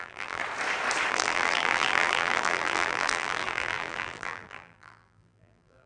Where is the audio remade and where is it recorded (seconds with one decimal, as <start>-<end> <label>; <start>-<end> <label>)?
0.0-0.4 remade; 0.4-1.1 recorded; 1.1-5.9 remade